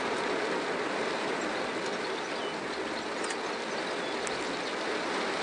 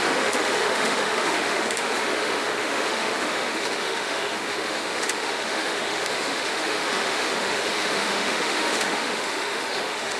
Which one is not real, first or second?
second